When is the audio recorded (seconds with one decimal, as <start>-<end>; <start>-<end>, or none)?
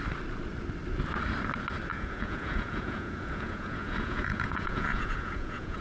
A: 0.0-1.9